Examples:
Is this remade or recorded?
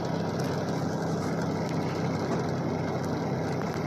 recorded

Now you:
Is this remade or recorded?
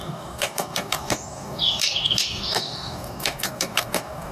remade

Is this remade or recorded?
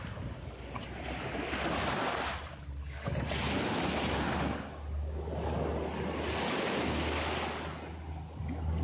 recorded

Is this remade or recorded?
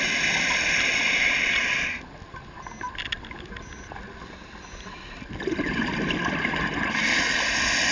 recorded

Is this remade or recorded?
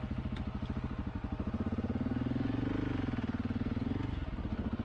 recorded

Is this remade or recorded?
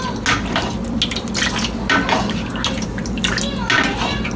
recorded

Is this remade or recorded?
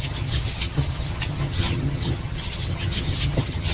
remade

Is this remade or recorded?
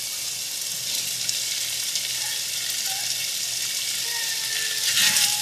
recorded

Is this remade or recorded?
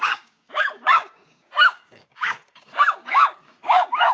remade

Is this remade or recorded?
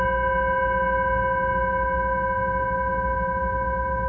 recorded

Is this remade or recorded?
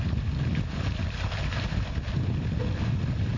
recorded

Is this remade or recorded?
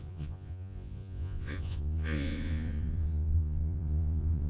remade